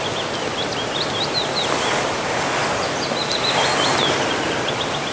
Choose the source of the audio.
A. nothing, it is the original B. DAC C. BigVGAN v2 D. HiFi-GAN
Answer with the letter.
A